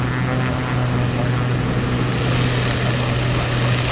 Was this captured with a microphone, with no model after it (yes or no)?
yes